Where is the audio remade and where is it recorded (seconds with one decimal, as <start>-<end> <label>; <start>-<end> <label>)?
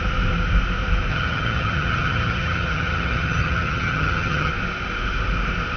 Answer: 0.0-1.1 recorded; 1.1-4.5 remade; 4.5-5.8 recorded